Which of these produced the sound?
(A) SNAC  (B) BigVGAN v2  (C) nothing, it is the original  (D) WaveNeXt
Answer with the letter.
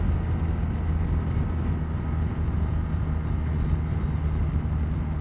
C